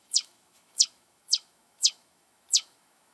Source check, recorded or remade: remade